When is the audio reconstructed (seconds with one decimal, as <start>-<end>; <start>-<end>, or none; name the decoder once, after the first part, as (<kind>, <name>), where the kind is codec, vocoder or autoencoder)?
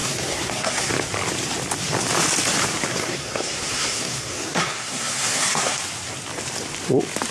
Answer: 0.0-0.9 (codec, SNAC); 2.9-5.8